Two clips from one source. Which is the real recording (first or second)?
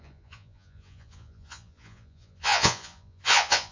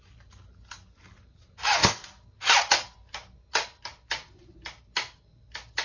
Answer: second